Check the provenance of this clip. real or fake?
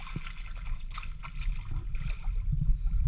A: real